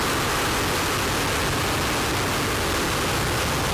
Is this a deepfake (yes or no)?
no